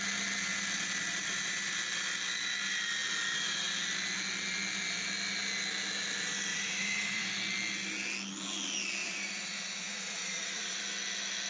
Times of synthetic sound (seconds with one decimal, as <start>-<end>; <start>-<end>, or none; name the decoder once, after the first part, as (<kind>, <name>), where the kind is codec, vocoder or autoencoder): 6.5-7.3 (vocoder, Vocos); 9.0-10.8